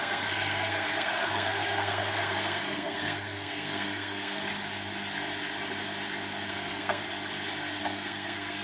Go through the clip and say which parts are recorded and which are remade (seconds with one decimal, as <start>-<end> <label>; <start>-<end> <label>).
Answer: 0.0-4.4 remade; 4.4-6.5 recorded; 6.5-7.0 remade; 7.0-7.8 recorded; 7.8-8.6 remade